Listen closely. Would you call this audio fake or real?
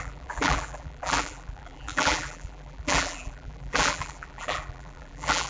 fake